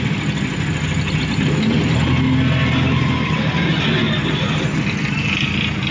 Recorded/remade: recorded